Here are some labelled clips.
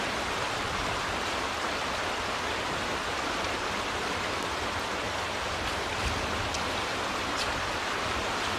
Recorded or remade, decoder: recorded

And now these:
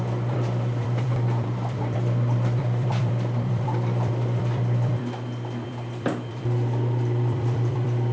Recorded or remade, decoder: remade, vocoder, BigVGAN v2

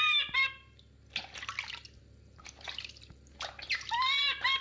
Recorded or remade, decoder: recorded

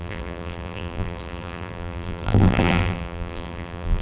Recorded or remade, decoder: remade, vocoder, BigVGAN v2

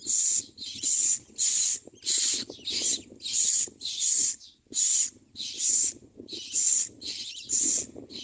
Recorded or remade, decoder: recorded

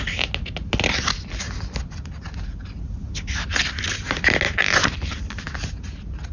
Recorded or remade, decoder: recorded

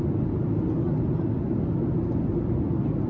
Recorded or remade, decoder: recorded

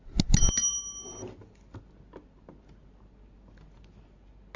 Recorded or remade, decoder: recorded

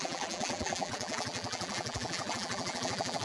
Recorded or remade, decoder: remade, vocoder, BigVGAN v2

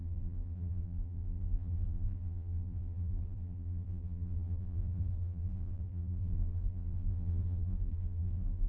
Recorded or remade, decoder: remade, vocoder, BigVGAN v2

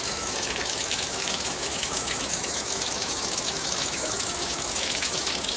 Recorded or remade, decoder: remade, autoencoder, DAC-VAE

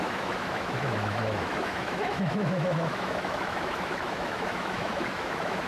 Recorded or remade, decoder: remade, autoencoder, DAC-VAE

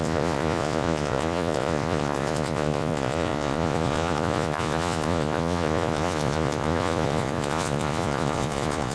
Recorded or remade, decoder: remade, vocoder, Vocos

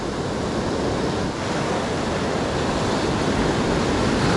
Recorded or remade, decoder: recorded